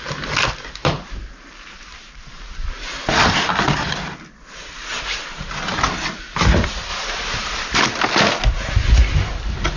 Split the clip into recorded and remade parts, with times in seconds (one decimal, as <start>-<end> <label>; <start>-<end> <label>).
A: 0.0-0.8 recorded; 0.8-3.5 remade; 3.5-4.9 recorded; 4.9-5.7 remade; 5.7-6.9 recorded; 6.9-7.8 remade; 7.8-9.8 recorded

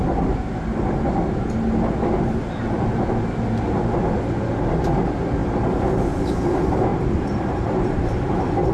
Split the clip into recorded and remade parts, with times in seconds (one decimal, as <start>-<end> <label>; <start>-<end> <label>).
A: 0.0-6.9 recorded; 6.9-8.7 remade

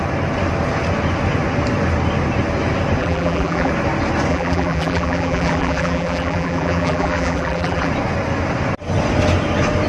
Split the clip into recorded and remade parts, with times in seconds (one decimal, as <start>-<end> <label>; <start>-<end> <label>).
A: 0.0-3.0 recorded; 3.0-3.7 remade; 3.7-4.3 recorded; 4.3-7.9 remade; 7.9-9.9 recorded

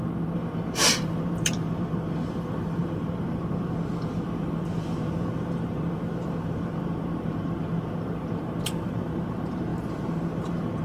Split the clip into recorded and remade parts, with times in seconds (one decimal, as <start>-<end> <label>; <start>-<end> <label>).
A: 0.0-10.8 remade

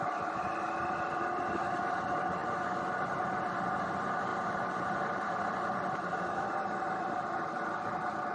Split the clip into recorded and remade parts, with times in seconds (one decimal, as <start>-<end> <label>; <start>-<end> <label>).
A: 0.0-8.3 remade